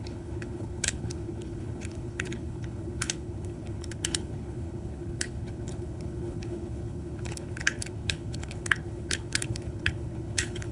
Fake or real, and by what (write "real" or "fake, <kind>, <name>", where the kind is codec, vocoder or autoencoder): fake, codec, HILCodec